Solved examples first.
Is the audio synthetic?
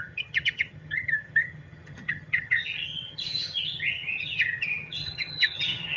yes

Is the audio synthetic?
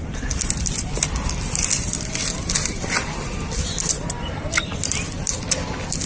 no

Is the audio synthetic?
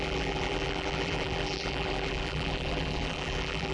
yes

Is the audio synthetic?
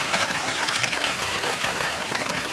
yes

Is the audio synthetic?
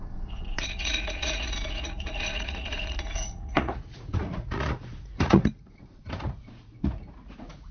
yes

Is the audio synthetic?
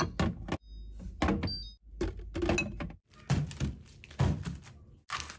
no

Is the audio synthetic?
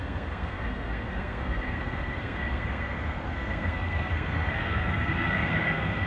yes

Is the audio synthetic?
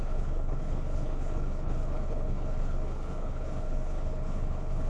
yes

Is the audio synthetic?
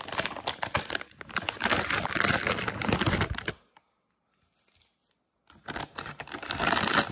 no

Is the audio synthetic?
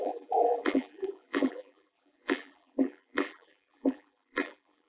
yes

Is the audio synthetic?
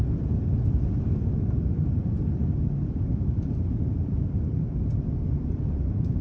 no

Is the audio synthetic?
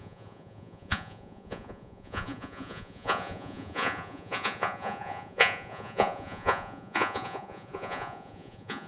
yes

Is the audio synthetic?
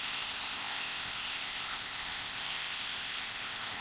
yes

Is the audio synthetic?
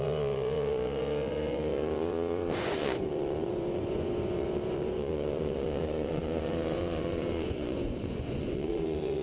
yes